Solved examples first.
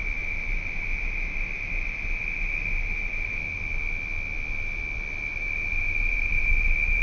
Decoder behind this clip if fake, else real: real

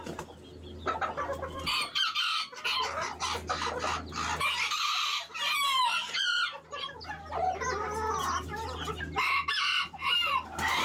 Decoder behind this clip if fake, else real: real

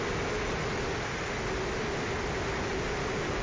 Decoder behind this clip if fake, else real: real